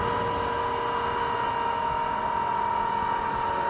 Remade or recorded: recorded